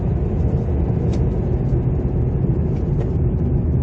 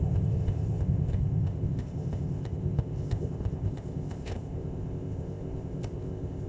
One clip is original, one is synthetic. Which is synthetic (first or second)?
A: second